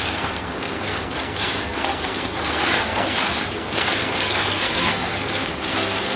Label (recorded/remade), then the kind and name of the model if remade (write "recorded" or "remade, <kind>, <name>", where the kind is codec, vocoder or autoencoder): remade, codec, SNAC